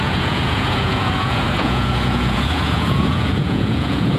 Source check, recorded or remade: remade